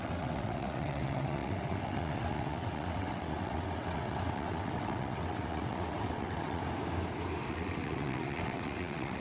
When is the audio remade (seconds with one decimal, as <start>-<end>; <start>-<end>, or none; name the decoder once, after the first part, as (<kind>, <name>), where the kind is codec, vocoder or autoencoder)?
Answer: 0.0-6.6 (vocoder, WaveNeXt); 7.5-9.2